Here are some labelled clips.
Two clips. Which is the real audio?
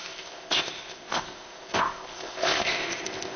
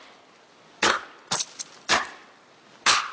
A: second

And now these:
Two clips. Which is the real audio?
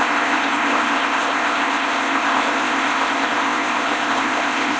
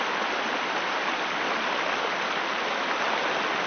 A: second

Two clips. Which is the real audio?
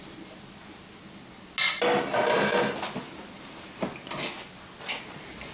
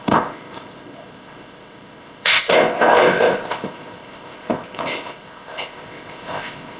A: first